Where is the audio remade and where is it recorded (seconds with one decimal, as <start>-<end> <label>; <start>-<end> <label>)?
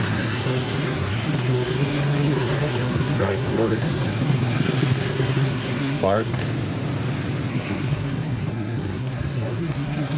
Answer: 0.0-6.4 remade; 6.4-7.5 recorded; 7.5-10.2 remade